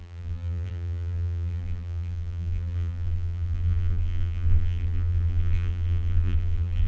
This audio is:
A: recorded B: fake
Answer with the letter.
B